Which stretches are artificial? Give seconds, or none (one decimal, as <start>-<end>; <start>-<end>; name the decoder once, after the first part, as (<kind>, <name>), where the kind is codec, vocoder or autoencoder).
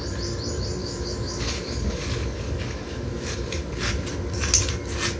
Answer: 0.8-3.9 (codec, DAC)